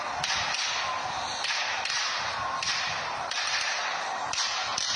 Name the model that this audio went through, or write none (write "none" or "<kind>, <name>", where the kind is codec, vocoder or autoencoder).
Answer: none